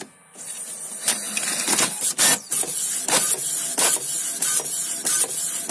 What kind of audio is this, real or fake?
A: real